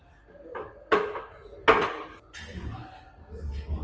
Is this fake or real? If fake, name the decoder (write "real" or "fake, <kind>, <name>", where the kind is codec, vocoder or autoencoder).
real